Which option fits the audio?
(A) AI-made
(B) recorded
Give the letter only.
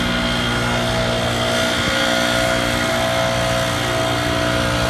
B